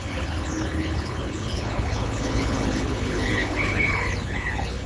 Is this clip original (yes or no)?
no